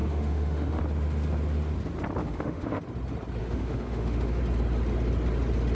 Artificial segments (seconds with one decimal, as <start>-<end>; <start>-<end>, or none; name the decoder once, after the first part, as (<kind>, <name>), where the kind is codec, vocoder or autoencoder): 0.0-0.8 (autoencoder, DAC-VAE); 2.2-2.8; 3.4-4.4